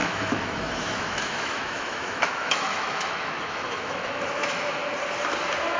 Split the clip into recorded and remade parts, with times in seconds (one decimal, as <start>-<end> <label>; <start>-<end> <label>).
0.0-4.8 remade; 4.8-5.8 recorded